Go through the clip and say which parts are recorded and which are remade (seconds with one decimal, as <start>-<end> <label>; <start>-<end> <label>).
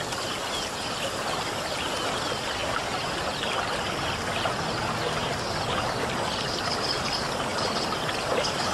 0.0-5.2 recorded; 5.2-6.8 remade; 6.8-8.7 recorded